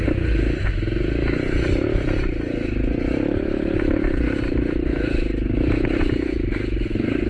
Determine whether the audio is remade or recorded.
recorded